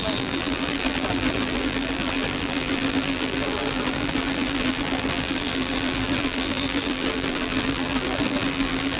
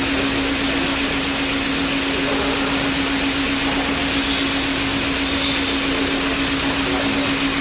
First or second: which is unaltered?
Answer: second